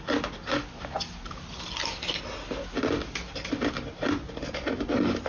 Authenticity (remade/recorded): recorded